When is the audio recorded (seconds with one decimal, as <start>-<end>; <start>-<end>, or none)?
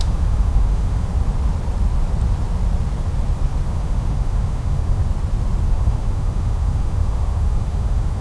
1.1-3.7; 5.0-5.7